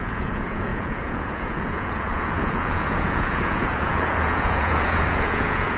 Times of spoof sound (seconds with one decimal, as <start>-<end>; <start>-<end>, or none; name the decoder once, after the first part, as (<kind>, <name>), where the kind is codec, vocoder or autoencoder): 0.0-5.8 (vocoder, Vocos)